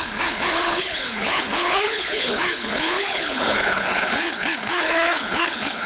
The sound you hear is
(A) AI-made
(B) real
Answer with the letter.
A